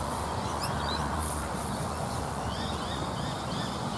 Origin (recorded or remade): remade